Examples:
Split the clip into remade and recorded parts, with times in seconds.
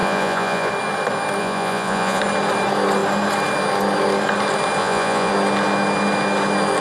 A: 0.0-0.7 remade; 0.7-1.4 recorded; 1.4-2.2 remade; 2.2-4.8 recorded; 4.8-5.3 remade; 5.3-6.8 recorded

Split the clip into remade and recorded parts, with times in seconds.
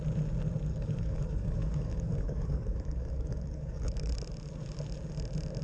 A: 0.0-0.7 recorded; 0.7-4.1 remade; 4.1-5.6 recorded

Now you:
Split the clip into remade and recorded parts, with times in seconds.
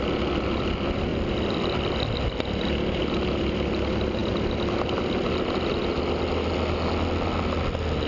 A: 0.0-8.1 recorded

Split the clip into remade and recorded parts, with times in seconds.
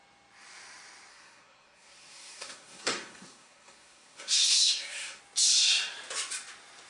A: 0.0-1.1 recorded; 1.1-5.2 remade; 5.2-6.9 recorded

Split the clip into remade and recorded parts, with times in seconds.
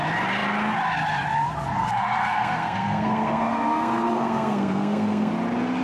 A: 0.0-1.8 recorded; 1.8-5.3 remade; 5.3-5.8 recorded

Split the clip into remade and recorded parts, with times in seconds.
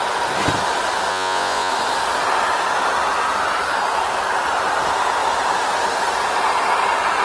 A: 0.0-1.1 recorded; 1.1-1.7 remade; 1.7-7.2 recorded